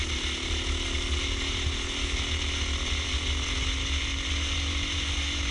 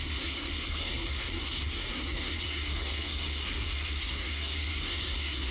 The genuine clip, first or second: first